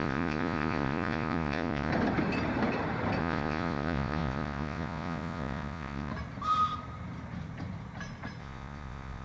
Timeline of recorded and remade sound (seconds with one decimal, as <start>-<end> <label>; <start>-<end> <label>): 0.0-1.9 remade; 1.9-3.2 recorded; 3.2-6.1 remade; 6.1-8.4 recorded; 8.4-9.2 remade